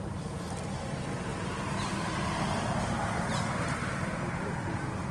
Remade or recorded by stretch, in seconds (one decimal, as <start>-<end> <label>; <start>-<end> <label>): 0.0-5.1 recorded